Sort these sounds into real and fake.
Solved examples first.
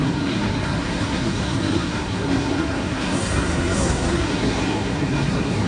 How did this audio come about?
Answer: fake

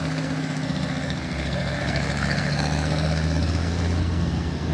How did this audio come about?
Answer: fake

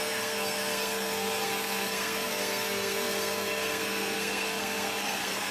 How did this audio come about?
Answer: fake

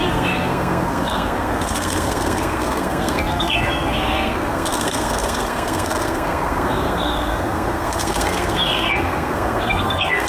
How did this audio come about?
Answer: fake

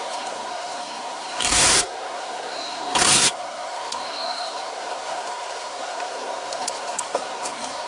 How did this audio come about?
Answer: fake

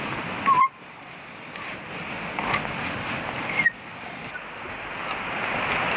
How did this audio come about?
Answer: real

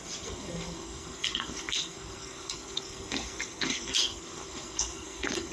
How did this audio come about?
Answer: fake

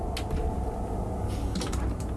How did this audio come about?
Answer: real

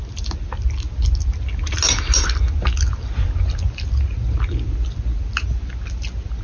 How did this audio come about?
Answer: real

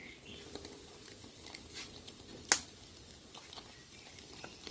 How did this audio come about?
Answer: real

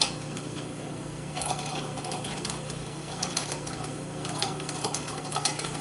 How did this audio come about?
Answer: fake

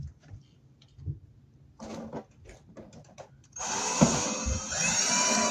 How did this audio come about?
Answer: real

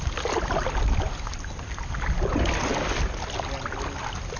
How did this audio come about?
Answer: real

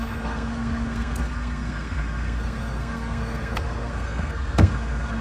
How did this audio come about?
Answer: fake